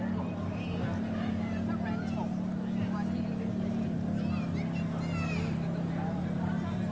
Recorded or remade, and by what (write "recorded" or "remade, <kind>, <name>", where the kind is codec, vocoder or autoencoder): recorded